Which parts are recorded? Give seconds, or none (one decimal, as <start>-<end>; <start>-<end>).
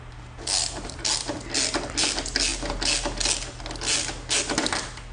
0.0-5.1